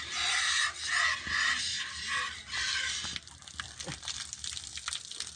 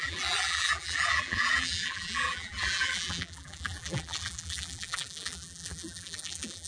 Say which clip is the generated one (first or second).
second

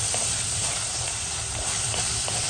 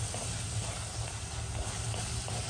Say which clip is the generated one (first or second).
first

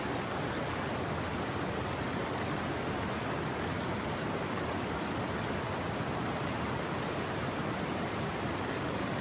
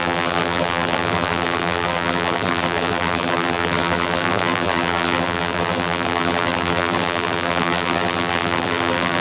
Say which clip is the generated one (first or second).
second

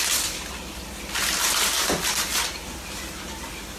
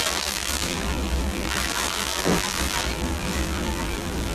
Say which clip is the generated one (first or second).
second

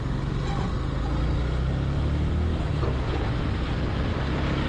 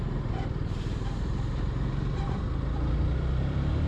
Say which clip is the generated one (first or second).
second